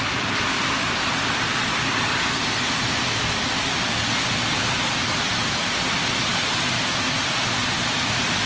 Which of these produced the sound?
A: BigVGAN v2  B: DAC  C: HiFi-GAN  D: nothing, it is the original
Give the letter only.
D